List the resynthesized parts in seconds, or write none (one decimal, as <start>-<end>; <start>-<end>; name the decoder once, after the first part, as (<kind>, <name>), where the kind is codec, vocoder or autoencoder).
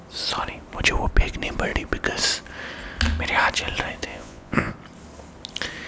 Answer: 4.1-4.7 (vocoder, Vocos)